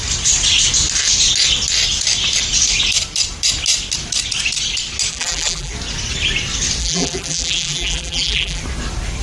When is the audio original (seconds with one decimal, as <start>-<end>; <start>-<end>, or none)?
0.0-5.1; 5.7-6.8; 8.6-9.2